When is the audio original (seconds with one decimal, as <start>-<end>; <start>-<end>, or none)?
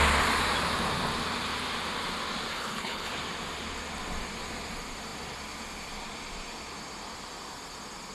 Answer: 0.0-2.5; 3.1-8.1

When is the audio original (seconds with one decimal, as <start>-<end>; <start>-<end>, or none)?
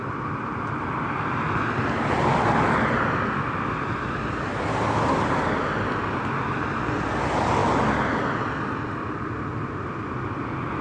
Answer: 0.0-10.8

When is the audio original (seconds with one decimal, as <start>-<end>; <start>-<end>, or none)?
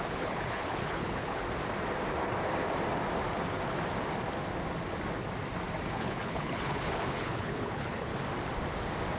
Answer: 1.4-5.9; 8.1-9.2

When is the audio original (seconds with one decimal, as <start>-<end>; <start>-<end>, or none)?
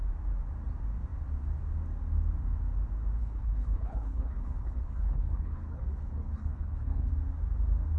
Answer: 0.0-3.2; 7.1-8.0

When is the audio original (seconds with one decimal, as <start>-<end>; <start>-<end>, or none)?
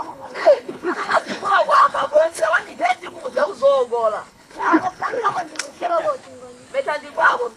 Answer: 3.5-4.3; 6.0-7.1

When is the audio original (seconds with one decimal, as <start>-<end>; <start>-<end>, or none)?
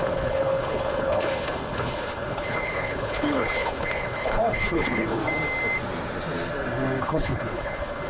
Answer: 5.2-7.0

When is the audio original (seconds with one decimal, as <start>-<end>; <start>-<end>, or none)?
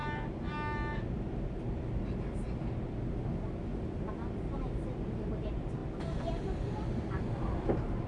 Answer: 0.0-8.1